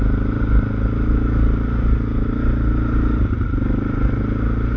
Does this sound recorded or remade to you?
recorded